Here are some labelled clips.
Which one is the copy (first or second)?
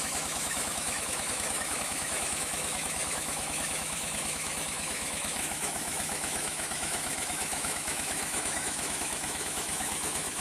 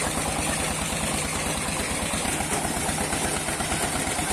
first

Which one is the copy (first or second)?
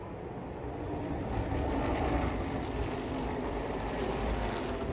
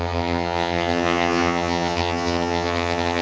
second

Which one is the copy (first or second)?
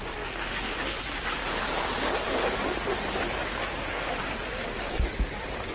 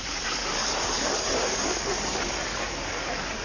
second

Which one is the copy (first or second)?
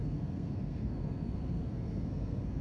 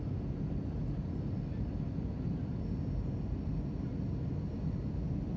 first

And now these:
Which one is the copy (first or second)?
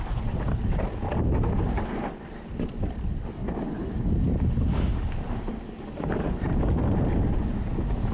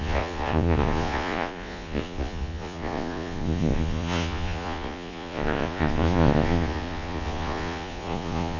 second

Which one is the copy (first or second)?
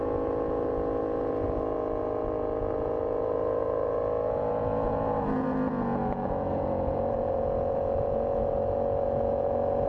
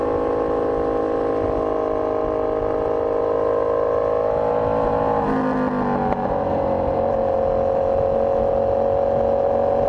first